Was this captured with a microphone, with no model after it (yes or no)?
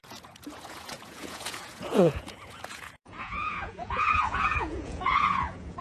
no